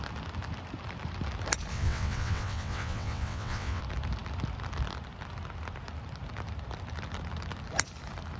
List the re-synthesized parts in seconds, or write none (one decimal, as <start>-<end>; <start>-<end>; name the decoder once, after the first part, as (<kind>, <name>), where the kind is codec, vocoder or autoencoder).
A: 1.7-3.8 (vocoder, WaveNeXt)